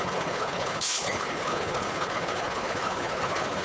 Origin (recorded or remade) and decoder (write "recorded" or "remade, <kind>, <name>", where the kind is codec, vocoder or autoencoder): remade, codec, HILCodec